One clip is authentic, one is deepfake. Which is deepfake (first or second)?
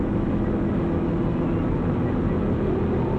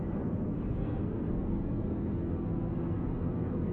second